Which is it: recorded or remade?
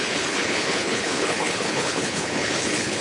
remade